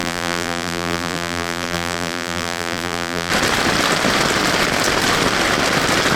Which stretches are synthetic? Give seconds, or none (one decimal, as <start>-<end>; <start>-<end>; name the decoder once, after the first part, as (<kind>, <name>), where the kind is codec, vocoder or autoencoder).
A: 0.0-3.3 (vocoder, BigVGAN v2)